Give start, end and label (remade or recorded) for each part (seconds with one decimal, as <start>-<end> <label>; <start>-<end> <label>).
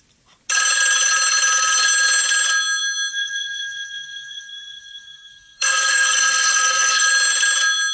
0.0-3.1 recorded; 3.1-7.1 remade; 7.1-7.9 recorded